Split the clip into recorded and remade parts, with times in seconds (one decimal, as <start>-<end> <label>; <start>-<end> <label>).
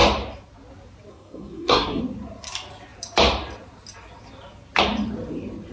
0.0-1.1 recorded; 1.1-2.0 remade; 2.0-5.7 recorded